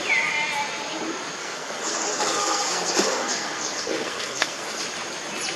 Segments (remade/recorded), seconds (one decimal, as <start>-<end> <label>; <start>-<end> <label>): 0.0-1.4 recorded; 1.4-4.8 remade; 4.8-5.6 recorded